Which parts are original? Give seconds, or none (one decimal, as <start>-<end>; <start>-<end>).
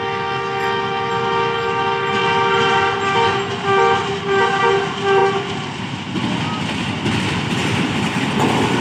0.0-8.8